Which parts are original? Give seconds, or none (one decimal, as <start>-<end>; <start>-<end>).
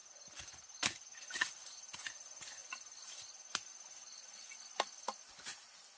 0.0-6.0